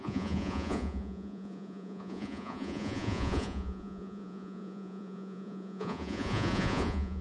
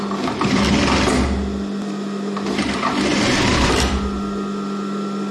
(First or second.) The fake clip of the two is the first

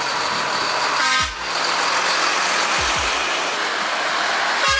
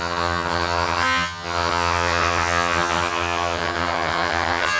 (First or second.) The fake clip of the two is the second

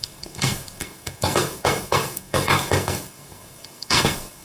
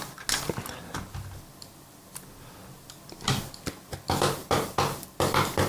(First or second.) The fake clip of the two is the first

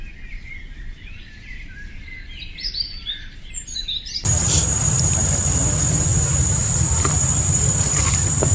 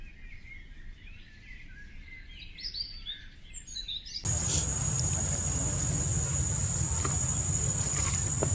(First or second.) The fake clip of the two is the first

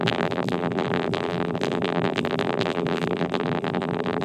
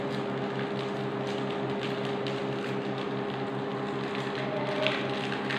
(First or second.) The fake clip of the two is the first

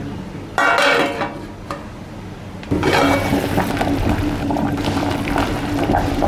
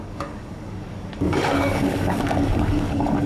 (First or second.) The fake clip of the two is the second